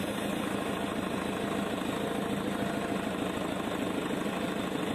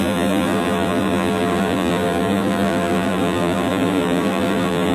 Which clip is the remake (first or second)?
second